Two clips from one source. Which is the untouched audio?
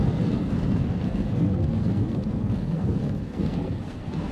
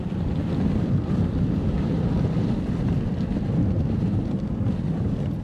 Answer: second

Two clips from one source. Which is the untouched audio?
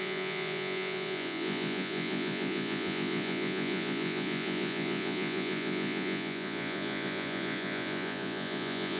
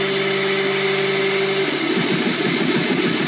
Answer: second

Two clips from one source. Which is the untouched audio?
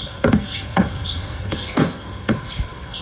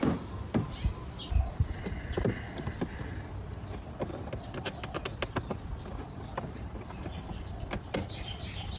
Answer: second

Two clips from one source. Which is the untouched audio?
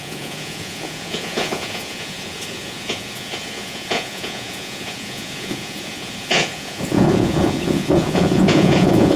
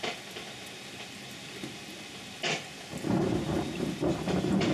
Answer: second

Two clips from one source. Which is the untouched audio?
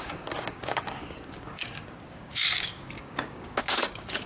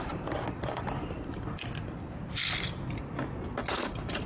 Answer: second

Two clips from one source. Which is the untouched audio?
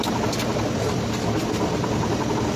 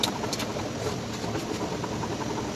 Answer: first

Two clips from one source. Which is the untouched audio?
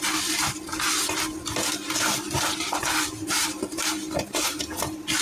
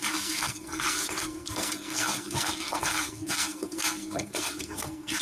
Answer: first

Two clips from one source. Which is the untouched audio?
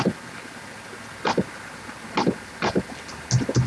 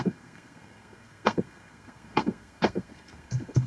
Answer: first